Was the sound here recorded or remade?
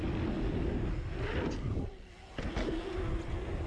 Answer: recorded